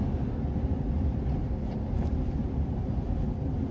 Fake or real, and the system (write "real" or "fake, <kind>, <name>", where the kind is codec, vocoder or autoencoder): real